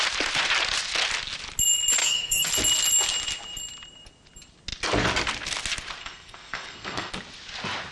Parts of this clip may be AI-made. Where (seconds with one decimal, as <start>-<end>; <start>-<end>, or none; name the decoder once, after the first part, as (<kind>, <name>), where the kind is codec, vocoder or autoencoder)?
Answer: 2.0-2.5 (codec, SNAC); 6.0-7.1

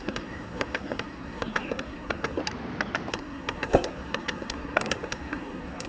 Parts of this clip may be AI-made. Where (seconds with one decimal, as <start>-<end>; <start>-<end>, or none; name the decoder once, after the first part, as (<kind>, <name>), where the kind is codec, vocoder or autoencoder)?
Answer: 0.0-2.4 (codec, SNAC); 3.1-5.9